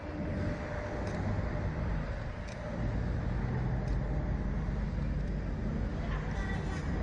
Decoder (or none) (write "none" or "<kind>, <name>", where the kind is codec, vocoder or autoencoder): none